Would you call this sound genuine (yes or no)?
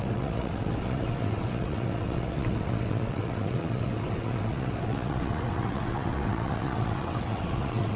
no